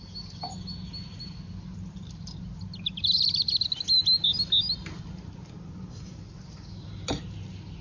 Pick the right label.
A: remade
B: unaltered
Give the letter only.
B